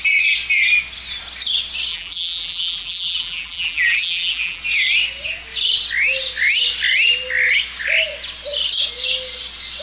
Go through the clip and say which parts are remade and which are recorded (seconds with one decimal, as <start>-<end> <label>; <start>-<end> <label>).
0.0-1.9 recorded; 1.9-4.6 remade; 4.6-9.8 recorded